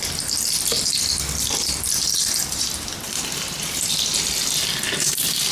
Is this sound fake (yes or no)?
no